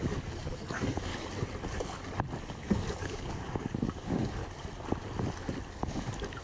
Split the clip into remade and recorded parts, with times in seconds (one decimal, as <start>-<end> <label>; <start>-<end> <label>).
0.0-1.1 remade; 1.1-2.4 recorded; 2.4-4.4 remade; 4.4-5.7 recorded; 5.7-6.4 remade

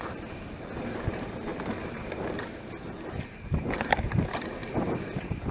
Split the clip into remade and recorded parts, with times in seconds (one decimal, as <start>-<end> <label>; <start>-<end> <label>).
0.0-5.5 remade

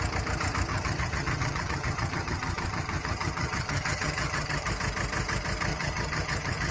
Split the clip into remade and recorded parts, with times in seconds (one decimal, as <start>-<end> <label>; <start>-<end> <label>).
0.0-0.7 recorded; 0.7-4.7 remade; 4.7-5.7 recorded; 5.7-6.7 remade